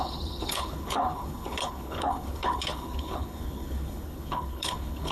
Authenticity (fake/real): fake